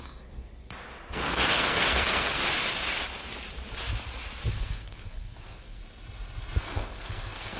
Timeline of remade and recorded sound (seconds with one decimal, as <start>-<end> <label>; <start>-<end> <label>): 0.0-0.5 remade; 0.5-1.1 recorded; 1.1-2.4 remade; 2.4-4.5 recorded; 4.5-5.8 remade; 5.8-6.6 recorded; 6.6-7.6 remade